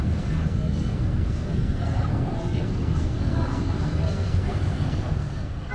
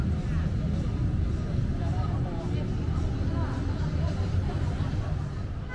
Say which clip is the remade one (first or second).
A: first